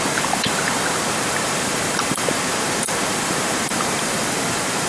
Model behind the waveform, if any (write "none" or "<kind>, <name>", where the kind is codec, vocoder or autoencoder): vocoder, BigVGAN v2